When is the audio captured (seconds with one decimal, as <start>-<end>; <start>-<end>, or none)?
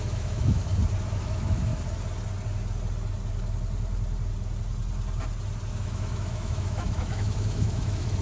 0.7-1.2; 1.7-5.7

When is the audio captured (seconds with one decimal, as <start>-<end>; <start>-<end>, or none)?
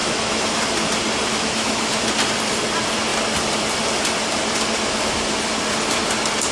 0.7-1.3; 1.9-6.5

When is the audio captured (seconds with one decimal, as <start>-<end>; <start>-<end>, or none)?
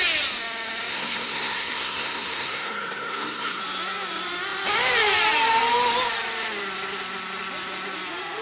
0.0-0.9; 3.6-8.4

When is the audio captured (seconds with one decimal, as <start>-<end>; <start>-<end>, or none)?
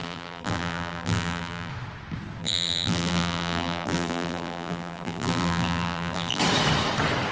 1.7-2.4; 6.4-7.3